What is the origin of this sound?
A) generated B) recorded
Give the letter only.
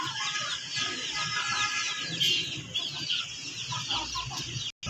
B